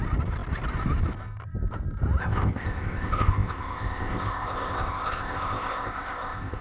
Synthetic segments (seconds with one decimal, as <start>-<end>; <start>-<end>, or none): 2.2-6.6